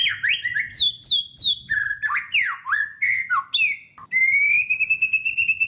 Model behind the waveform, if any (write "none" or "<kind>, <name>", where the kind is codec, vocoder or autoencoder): none